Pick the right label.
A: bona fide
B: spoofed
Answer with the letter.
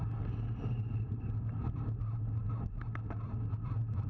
A